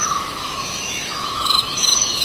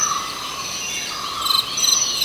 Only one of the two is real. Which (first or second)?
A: second